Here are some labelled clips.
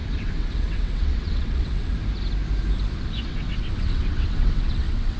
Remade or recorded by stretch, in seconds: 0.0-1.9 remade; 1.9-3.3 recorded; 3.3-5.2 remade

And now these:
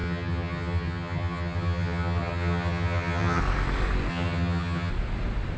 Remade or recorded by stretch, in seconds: 0.0-3.4 remade; 3.4-4.1 recorded; 4.1-4.9 remade; 4.9-5.6 recorded

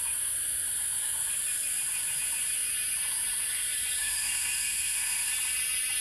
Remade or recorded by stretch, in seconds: 0.0-4.0 recorded; 4.0-5.3 remade; 5.3-6.0 recorded

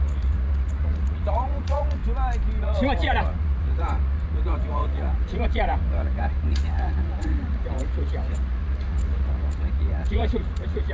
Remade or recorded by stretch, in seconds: 0.0-2.0 remade; 2.0-2.6 recorded; 2.6-10.9 remade

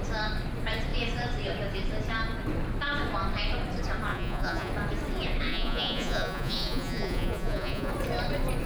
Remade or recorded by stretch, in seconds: 0.0-4.1 recorded; 4.1-4.7 remade; 4.7-5.5 recorded; 5.5-7.9 remade; 7.9-8.7 recorded

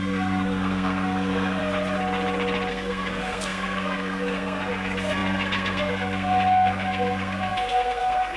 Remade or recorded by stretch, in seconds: 0.0-1.6 remade; 1.6-2.7 recorded; 2.7-8.4 remade

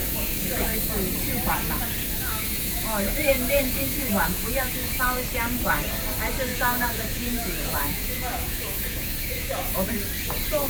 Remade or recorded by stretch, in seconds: 0.0-0.9 remade; 0.9-2.0 recorded; 2.0-5.0 remade; 5.0-6.5 recorded; 6.5-9.9 remade; 9.9-10.7 recorded

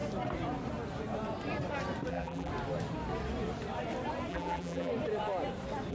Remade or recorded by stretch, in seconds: 0.0-2.1 recorded; 2.1-2.5 remade; 2.5-4.3 recorded; 4.3-4.9 remade; 4.9-5.9 recorded